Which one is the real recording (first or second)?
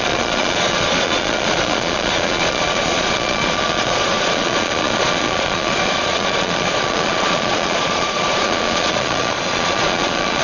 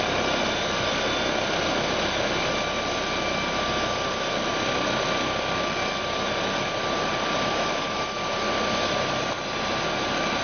second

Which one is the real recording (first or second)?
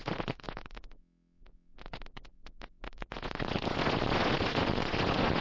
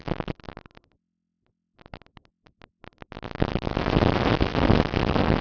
second